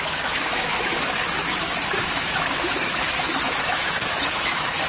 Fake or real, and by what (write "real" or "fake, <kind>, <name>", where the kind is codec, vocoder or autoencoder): fake, autoencoder, DAC-VAE